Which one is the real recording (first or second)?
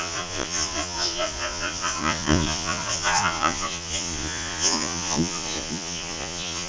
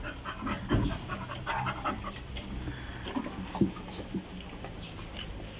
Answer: second